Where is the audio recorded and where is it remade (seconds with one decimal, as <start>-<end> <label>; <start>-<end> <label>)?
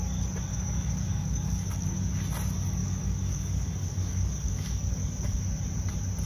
0.0-0.5 recorded; 0.5-2.1 remade; 2.1-2.8 recorded; 2.8-5.4 remade; 5.4-6.3 recorded